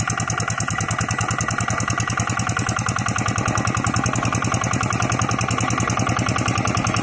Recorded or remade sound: recorded